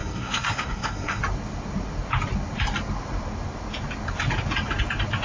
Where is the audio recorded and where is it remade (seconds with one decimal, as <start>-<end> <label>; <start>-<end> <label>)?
0.0-1.2 remade; 1.2-5.2 recorded